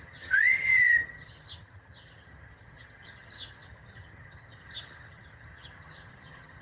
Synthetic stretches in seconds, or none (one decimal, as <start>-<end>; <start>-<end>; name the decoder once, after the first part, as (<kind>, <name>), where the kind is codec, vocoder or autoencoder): 0.0-6.6 (vocoder, HiFi-GAN)